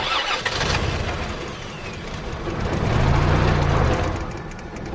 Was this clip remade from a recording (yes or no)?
no